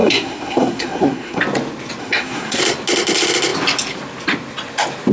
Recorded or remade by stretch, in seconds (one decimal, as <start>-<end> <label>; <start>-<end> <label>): 0.0-1.4 remade; 1.4-2.0 recorded; 2.0-2.6 remade; 2.6-5.1 recorded